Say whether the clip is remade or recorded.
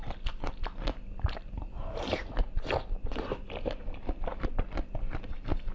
recorded